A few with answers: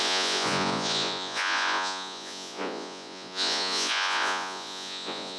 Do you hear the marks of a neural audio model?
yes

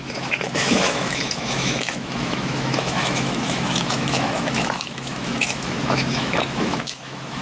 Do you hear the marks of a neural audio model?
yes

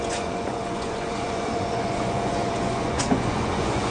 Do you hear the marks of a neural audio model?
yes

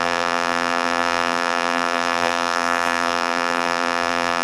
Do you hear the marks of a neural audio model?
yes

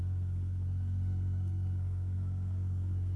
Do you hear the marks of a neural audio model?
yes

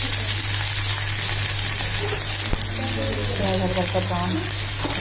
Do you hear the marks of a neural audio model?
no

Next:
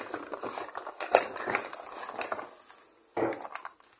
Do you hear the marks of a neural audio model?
no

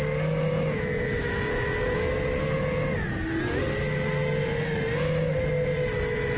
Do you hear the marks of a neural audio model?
no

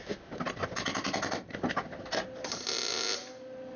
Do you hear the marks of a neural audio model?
no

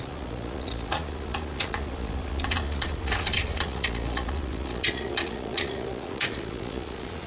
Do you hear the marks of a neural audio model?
yes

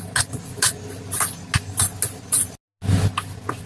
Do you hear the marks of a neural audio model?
no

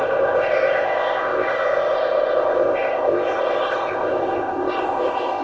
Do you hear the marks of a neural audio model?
yes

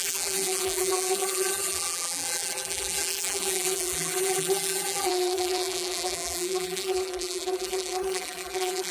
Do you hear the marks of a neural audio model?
yes